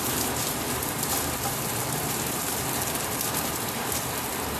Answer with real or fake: fake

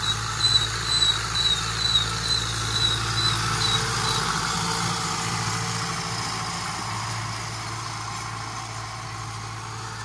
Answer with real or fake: real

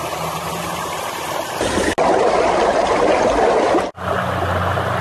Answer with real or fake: real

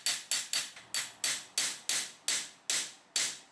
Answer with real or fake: real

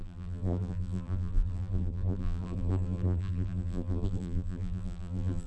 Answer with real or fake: fake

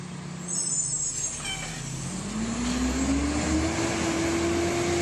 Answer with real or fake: real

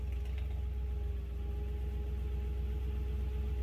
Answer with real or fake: real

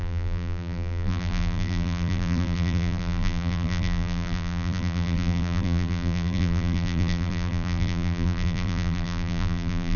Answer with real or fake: fake